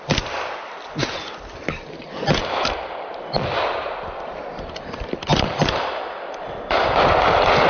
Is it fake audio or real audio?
real